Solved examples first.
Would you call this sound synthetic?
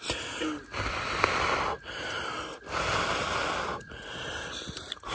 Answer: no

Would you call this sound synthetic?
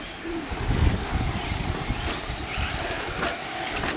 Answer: no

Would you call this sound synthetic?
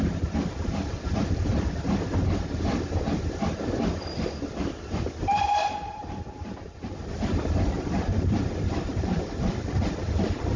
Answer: yes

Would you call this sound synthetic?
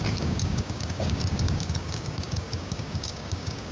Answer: yes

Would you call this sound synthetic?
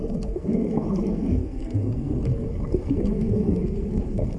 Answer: yes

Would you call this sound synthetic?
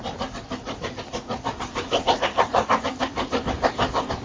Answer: no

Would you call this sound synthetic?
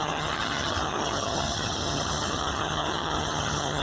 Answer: yes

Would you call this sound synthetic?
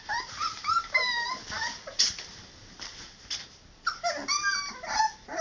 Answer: no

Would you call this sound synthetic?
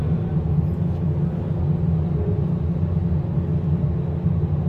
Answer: no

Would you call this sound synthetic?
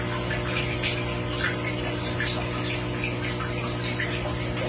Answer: no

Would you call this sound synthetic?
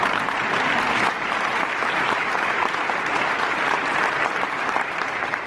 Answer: yes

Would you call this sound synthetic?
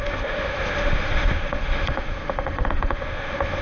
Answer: yes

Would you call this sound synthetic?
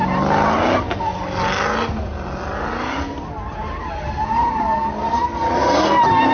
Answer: no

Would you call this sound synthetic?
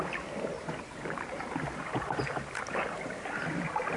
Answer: no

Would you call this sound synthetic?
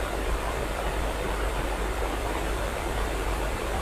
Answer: yes